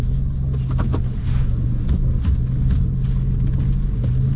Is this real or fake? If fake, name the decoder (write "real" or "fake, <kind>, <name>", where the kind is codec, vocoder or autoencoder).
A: real